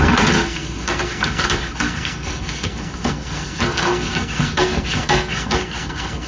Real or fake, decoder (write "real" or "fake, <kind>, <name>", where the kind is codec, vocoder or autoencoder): fake, codec, SNAC